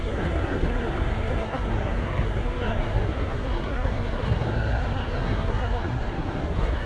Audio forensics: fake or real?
fake